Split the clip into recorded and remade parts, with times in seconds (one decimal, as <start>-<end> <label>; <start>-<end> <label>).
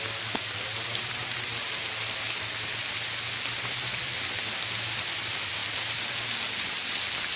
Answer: 0.0-7.4 recorded